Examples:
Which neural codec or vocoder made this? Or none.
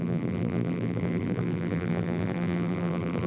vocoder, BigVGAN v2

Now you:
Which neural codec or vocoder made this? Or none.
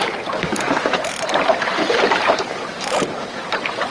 vocoder, BigVGAN v2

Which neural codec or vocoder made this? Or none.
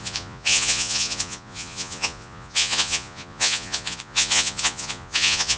vocoder, Vocos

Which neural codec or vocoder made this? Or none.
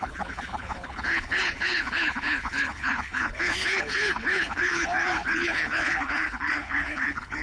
codec, HILCodec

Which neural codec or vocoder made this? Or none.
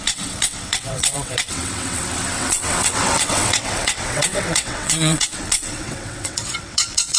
vocoder, WaveNeXt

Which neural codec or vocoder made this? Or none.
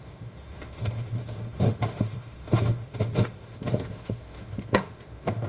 autoencoder, DAC-VAE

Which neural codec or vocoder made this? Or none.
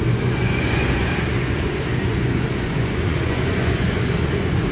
vocoder, Vocos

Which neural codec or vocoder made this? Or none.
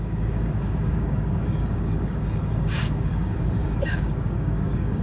codec, DAC